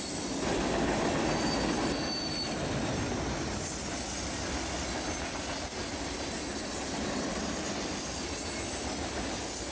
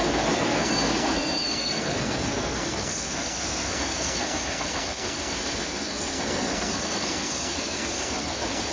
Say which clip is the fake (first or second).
second